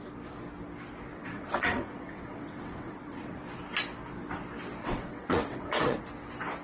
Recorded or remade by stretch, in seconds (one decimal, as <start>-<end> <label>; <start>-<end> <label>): 0.0-1.1 recorded; 1.1-3.4 remade; 3.4-4.8 recorded; 4.8-6.0 remade; 6.0-6.6 recorded